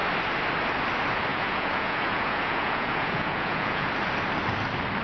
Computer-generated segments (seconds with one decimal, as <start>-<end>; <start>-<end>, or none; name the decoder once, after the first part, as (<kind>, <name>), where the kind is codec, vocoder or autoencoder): 1.3-3.9 (vocoder, Vocos)